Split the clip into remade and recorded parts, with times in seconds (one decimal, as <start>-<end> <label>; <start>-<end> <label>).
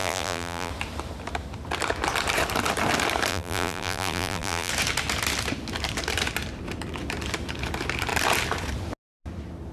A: 0.0-0.7 remade; 0.7-3.3 recorded; 3.3-4.7 remade; 4.7-9.7 recorded